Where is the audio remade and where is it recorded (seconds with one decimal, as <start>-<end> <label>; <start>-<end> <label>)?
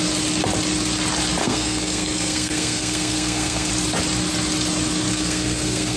0.0-1.4 recorded; 1.4-3.7 remade; 3.7-5.1 recorded; 5.1-6.0 remade